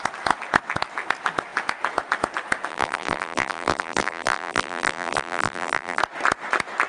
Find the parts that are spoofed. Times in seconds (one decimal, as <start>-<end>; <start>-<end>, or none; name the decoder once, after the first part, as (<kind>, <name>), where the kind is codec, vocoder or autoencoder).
2.7-6.0 (vocoder, BigVGAN v2)